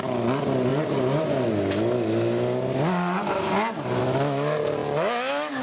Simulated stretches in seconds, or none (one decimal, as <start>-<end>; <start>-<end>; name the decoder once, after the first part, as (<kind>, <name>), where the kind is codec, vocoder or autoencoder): none